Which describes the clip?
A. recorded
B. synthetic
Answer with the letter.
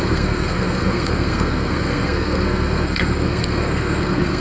B